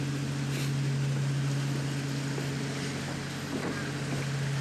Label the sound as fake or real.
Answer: real